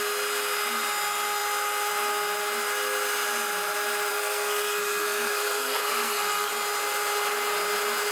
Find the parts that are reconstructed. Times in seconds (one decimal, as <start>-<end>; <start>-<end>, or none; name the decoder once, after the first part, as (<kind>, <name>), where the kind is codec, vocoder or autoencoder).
4.1-6.5 (codec, SNAC)